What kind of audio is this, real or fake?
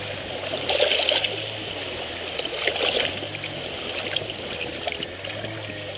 real